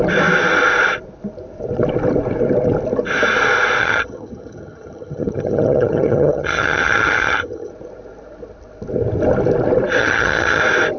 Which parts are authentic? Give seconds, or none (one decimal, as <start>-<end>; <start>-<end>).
0.0-3.8; 7.7-10.0; 10.6-11.0